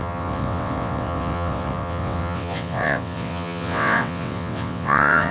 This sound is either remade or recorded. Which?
remade